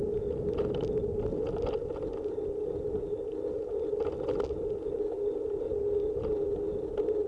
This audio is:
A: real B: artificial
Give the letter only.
A